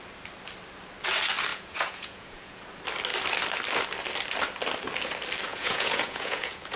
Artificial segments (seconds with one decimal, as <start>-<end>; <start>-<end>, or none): 1.5-2.6; 5.5-6.8